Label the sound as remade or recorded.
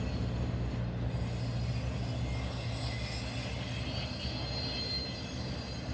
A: recorded